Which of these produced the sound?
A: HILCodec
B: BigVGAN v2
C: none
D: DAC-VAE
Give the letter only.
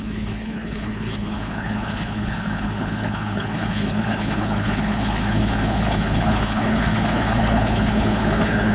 A